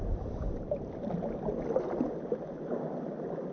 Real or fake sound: real